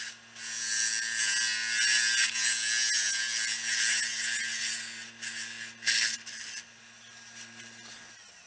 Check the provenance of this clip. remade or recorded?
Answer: recorded